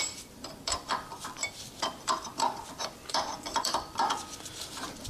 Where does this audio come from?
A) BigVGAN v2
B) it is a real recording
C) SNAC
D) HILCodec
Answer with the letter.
A